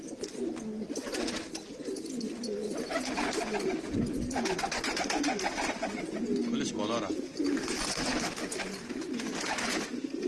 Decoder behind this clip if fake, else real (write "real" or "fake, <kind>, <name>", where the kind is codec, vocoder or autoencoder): real